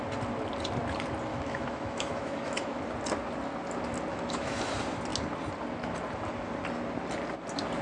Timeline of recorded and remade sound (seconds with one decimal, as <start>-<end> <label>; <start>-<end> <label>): 0.0-1.3 recorded; 1.3-2.8 remade; 2.8-4.1 recorded; 4.1-4.6 remade; 4.6-7.8 recorded